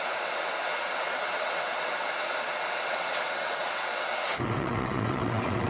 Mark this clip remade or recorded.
remade